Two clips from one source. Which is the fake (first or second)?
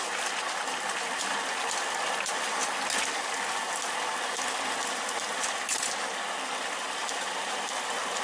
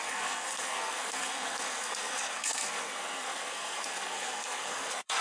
second